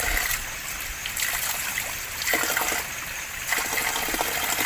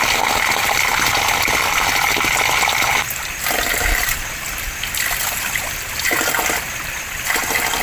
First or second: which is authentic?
first